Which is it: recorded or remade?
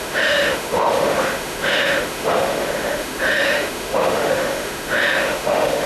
remade